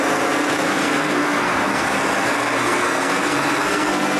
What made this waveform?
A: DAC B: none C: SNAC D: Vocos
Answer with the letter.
C